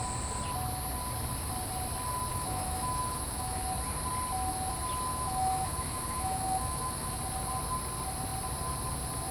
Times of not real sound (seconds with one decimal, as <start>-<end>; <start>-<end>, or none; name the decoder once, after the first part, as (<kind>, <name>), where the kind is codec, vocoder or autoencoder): 2.3-3.6 (autoencoder, DAC-VAE); 5.1-7.2